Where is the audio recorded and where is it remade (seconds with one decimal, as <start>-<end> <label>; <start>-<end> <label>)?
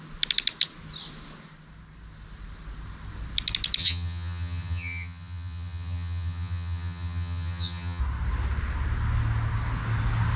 0.0-3.8 recorded; 3.8-8.0 remade; 8.0-10.4 recorded